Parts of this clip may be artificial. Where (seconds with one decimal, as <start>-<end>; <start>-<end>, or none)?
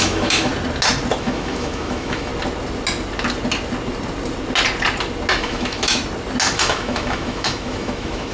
0.0-0.5; 1.2-2.3; 5.4-6.0; 6.5-8.3